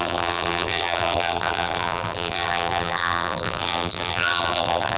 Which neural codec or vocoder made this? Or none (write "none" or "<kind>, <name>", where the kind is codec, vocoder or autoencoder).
vocoder, BigVGAN v2